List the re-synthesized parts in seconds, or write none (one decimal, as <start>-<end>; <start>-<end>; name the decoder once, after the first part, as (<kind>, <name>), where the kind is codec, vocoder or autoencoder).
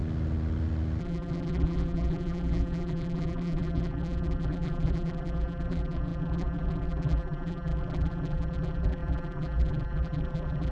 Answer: 1.0-10.7 (vocoder, BigVGAN v2)